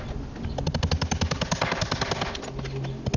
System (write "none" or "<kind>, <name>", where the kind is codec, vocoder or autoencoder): none